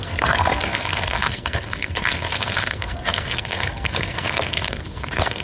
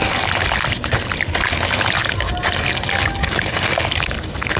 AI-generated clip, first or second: first